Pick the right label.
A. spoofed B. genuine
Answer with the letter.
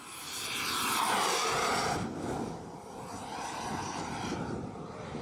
B